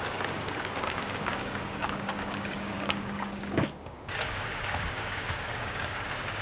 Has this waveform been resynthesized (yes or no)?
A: yes